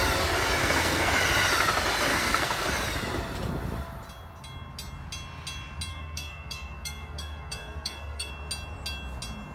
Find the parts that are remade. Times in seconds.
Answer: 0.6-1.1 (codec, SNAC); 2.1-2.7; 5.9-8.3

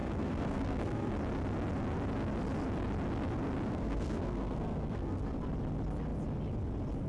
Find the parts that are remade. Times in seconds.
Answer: 0.0-1.1 (codec, SNAC); 3.7-5.2

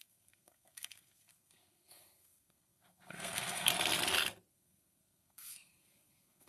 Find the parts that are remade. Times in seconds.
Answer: 0.0-3.7 (codec, SNAC); 4.5-6.5

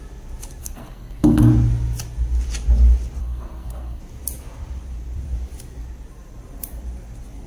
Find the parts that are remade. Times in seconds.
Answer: 0.6-1.5 (codec, SNAC); 3.2-4.0

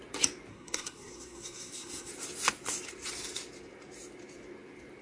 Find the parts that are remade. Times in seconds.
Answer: 0.5-2.1 (codec, SNAC)

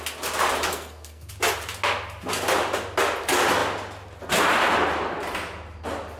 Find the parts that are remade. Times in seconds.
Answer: 0.7-1.3 (codec, SNAC)

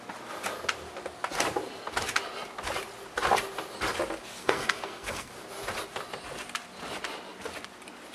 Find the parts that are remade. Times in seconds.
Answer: 4.4-5.3 (codec, SNAC)

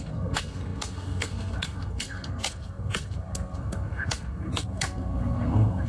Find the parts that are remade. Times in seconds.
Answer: 0.0-5.9 (codec, SNAC)